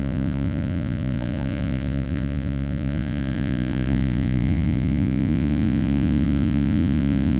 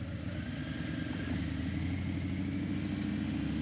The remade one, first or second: first